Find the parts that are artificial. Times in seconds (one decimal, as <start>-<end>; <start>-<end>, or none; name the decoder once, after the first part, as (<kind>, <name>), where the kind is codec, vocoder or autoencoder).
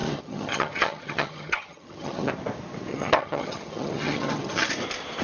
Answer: 0.0-2.3 (vocoder, HiFi-GAN); 2.9-4.7